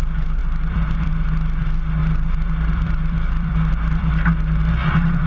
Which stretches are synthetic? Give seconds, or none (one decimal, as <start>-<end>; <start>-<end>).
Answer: 0.4-1.1; 2.0-4.1